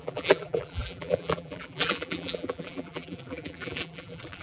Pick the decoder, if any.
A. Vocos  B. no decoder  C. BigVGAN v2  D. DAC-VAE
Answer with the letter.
C